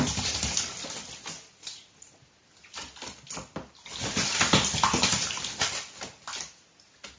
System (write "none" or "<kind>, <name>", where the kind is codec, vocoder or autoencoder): none